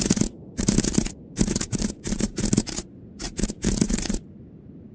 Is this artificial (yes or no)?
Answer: yes